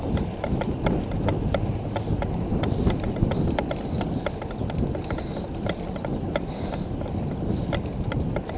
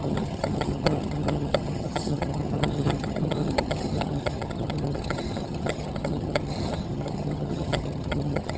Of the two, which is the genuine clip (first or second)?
first